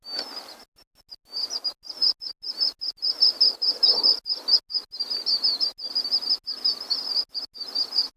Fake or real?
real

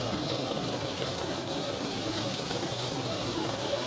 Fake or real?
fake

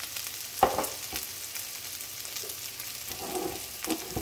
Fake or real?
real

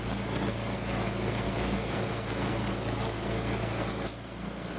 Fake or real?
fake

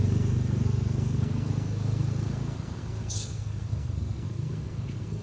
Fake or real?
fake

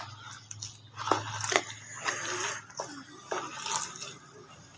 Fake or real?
real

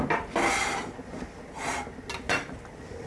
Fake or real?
real